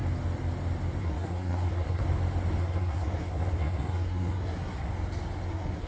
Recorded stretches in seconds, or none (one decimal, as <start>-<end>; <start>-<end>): 0.0-1.0; 2.0-2.6; 4.9-5.5